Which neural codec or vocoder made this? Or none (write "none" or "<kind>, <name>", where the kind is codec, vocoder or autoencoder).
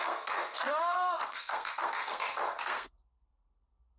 codec, SNAC